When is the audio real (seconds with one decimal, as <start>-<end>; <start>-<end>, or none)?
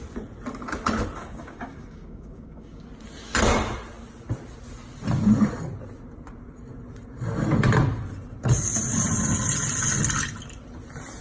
0.0-1.2; 2.8-11.2